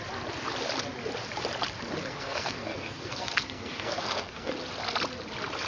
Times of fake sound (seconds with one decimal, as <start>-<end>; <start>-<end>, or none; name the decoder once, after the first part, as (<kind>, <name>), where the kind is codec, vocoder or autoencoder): 2.0-4.5 (codec, SNAC)